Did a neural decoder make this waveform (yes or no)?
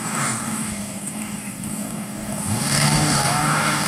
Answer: yes